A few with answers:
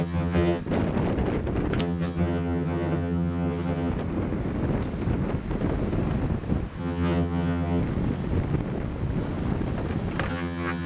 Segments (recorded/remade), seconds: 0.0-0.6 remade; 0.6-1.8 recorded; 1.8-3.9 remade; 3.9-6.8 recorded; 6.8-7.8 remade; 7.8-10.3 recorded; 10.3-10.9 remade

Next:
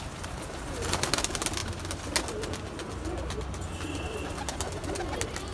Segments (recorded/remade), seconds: 0.0-5.5 recorded

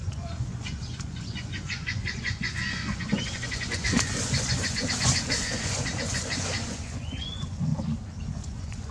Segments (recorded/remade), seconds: 0.0-7.7 remade; 7.7-8.3 recorded; 8.3-8.9 remade